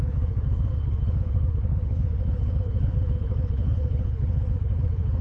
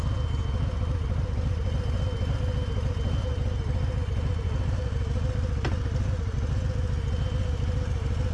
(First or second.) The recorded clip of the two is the second